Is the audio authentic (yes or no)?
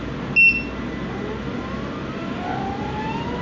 yes